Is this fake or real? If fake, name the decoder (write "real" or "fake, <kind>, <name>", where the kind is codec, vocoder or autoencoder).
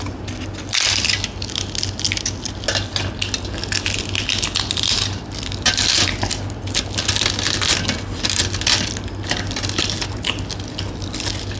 real